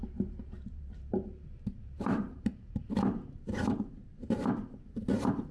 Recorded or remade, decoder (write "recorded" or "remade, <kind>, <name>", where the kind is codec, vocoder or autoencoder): remade, vocoder, BigVGAN v2